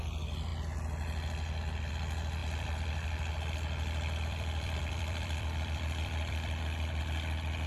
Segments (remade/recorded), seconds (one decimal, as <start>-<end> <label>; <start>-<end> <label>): 0.0-2.4 recorded; 2.4-7.0 remade; 7.0-7.7 recorded